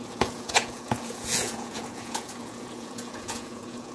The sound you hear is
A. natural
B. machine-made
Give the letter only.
B